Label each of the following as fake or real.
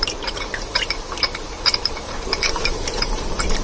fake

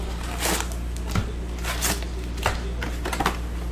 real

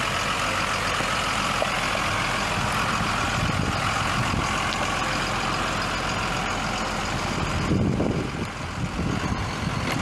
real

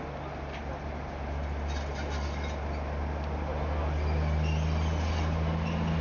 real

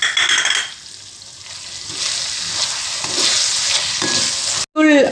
real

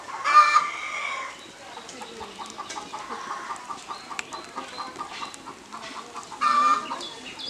real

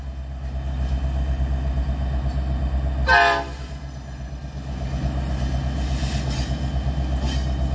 real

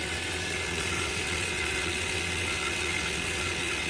fake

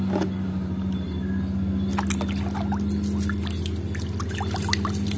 real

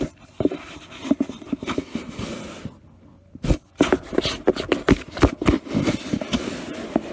real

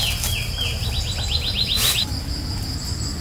real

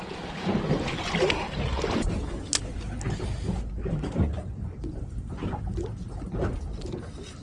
real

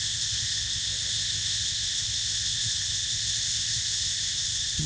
fake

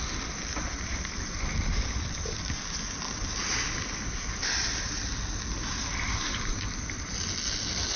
real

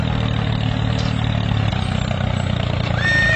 real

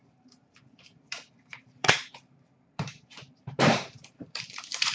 fake